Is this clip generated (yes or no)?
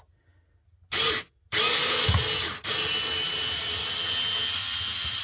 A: no